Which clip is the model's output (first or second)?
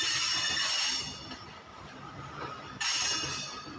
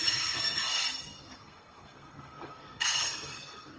second